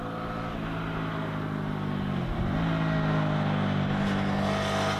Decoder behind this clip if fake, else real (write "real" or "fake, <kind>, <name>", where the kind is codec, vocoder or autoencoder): real